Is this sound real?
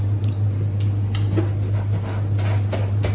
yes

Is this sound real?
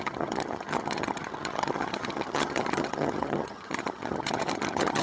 no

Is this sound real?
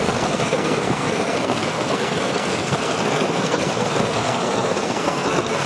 no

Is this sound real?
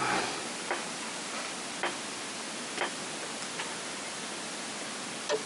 yes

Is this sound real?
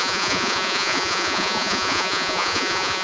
no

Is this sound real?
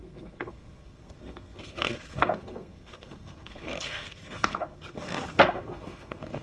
no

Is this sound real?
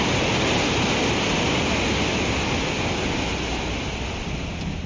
yes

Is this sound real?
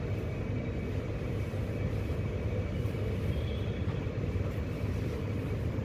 yes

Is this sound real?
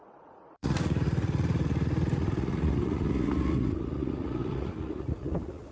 no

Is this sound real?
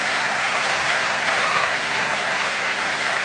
no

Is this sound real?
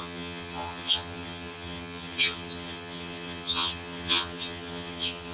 no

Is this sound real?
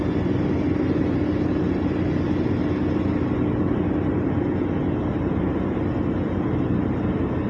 yes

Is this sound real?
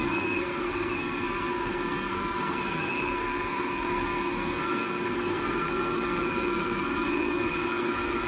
no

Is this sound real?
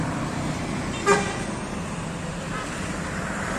no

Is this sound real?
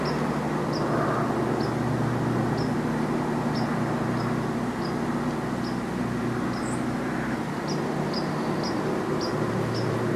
yes